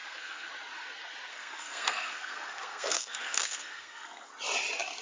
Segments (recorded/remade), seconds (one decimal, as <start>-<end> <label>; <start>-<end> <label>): 0.0-0.5 remade; 0.5-1.3 recorded; 1.3-4.3 remade; 4.3-5.0 recorded